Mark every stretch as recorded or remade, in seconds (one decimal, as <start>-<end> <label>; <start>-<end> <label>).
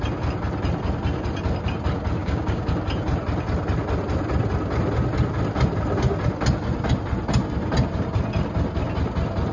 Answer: 0.0-2.2 recorded; 2.2-2.7 remade; 2.7-9.5 recorded